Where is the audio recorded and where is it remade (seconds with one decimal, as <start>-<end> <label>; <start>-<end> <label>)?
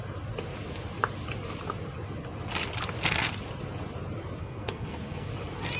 0.0-4.4 recorded; 4.4-5.3 remade; 5.3-5.8 recorded